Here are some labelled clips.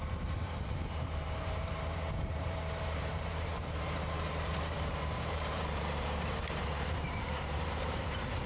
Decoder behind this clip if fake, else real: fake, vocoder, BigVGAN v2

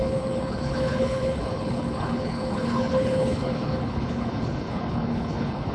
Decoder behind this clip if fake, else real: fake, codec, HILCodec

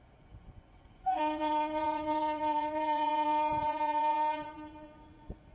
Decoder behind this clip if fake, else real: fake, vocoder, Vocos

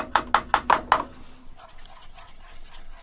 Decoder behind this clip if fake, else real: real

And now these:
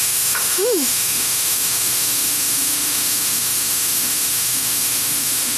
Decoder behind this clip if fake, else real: fake, autoencoder, DAC-VAE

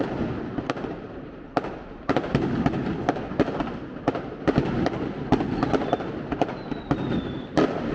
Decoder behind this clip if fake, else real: real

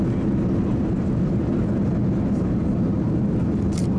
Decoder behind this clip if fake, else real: real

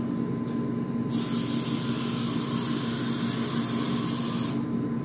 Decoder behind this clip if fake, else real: real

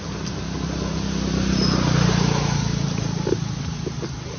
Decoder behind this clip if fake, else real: real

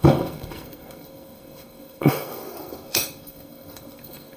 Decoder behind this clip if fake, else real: fake, codec, SNAC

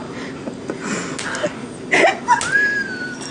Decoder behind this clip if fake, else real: real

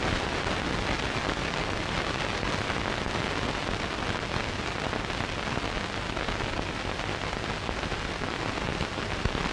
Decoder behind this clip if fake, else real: real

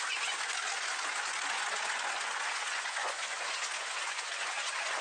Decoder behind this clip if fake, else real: fake, vocoder, Vocos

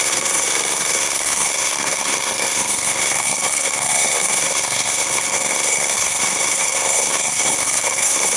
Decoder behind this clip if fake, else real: fake, codec, SNAC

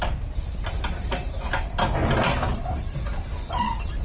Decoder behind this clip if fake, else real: real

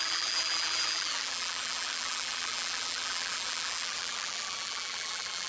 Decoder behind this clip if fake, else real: fake, vocoder, BigVGAN v2